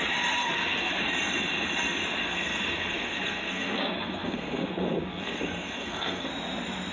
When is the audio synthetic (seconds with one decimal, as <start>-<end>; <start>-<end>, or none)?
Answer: 0.4-1.0; 2.2-6.3